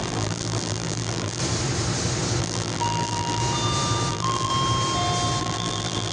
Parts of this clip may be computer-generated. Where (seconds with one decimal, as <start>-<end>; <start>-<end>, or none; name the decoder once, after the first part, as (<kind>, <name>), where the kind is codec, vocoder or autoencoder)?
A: 0.0-1.4 (vocoder, BigVGAN v2); 2.4-3.4; 4.1-4.5; 5.4-6.1